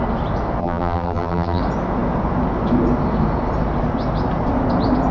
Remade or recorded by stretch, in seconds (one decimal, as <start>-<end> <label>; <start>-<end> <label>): 0.0-0.6 recorded; 0.6-1.6 remade; 1.6-5.1 recorded